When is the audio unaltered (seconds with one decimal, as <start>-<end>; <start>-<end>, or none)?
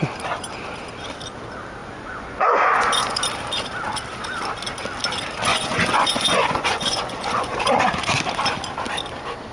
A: 0.0-1.8; 3.2-5.5; 7.7-9.5